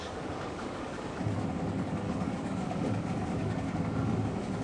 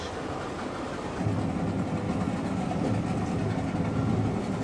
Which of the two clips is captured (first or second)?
second